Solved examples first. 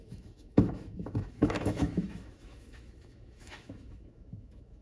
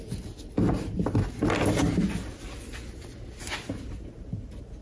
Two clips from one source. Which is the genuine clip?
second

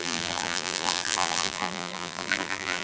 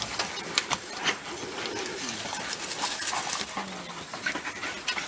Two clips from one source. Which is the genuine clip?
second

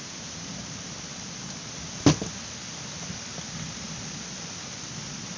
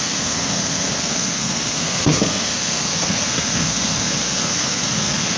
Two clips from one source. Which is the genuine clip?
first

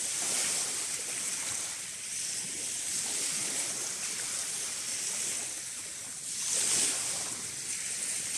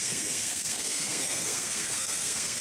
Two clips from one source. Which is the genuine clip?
first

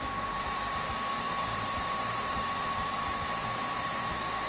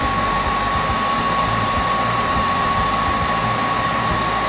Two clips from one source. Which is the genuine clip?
second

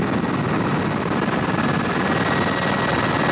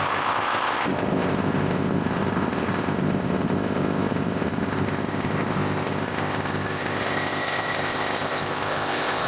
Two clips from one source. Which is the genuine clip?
first